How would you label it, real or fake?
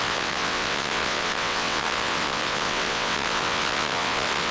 fake